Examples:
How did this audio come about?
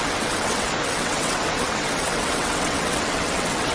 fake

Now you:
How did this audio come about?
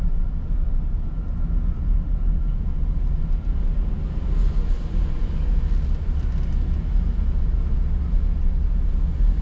real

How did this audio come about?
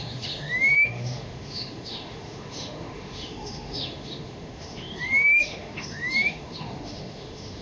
fake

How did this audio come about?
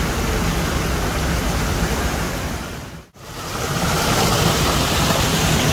real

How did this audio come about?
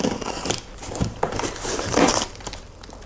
fake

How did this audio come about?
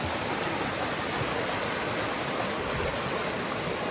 real